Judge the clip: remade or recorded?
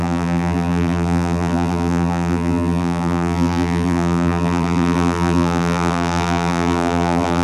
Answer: remade